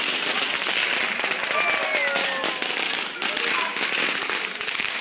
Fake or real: real